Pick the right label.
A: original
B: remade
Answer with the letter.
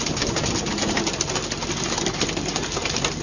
A